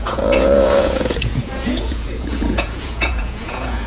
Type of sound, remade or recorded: remade